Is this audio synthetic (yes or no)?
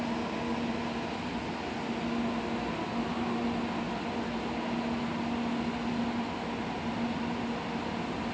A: no